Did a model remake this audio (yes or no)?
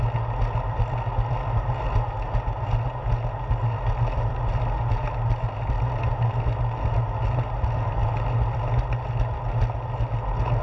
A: no